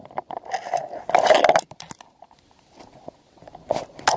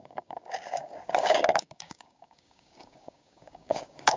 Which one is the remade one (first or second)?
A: second